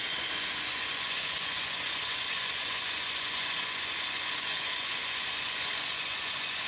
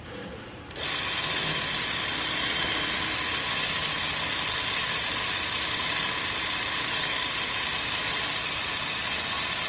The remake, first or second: first